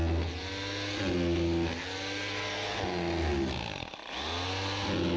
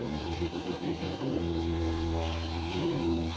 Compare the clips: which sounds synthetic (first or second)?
second